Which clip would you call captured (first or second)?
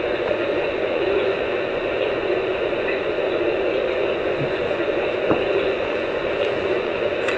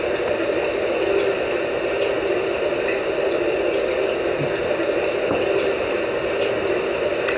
second